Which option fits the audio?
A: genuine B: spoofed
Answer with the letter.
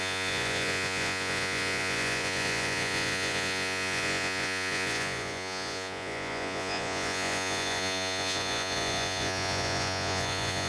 B